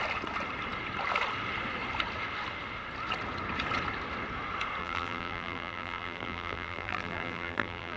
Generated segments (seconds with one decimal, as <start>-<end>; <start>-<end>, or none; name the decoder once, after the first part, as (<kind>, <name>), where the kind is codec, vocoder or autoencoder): 4.8-8.0 (vocoder, BigVGAN v2)